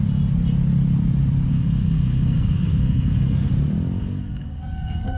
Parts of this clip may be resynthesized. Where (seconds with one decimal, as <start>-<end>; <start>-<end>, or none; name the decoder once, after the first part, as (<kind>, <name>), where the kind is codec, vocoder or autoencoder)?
1.5-3.5 (codec, SNAC); 4.0-5.2